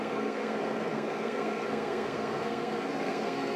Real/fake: fake